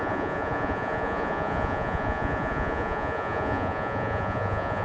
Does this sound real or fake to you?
fake